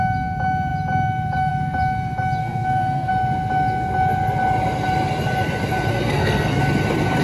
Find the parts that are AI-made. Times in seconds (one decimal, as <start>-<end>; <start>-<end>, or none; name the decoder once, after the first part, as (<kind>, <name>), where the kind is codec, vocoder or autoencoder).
2.4-3.1 (codec, SNAC); 5.9-6.6